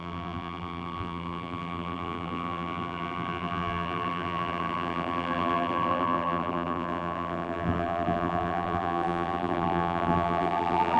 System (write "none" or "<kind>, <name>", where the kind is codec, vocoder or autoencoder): vocoder, BigVGAN v2